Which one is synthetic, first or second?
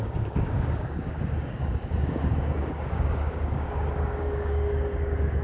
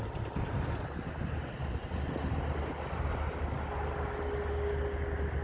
first